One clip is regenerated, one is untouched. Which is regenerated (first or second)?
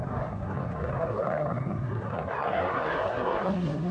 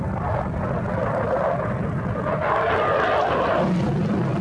first